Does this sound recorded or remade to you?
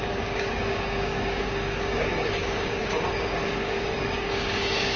remade